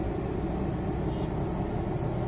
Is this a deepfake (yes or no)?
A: no